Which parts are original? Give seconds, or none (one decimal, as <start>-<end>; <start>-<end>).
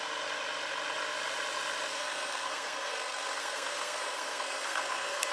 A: 0.0-1.9